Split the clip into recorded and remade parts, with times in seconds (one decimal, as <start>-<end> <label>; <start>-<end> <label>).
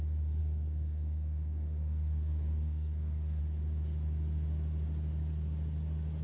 0.0-0.4 recorded; 0.4-3.4 remade; 3.4-6.2 recorded